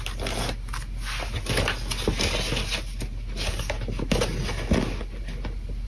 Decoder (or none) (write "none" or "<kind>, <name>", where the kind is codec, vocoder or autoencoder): none